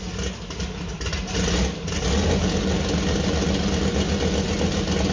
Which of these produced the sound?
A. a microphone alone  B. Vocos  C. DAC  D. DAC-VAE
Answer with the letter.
A